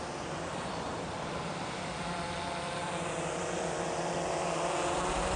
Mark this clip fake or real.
fake